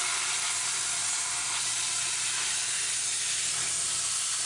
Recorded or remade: recorded